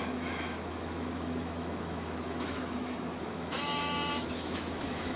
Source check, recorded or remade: remade